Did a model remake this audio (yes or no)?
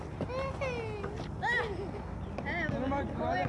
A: no